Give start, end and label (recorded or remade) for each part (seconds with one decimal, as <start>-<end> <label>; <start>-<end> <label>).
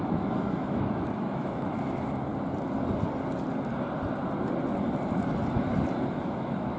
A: 0.0-2.3 remade; 2.3-6.0 recorded; 6.0-6.8 remade